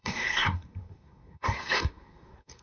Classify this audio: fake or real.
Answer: fake